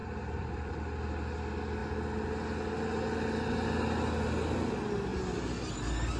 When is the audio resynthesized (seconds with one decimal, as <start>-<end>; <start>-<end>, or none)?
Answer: 0.0-0.7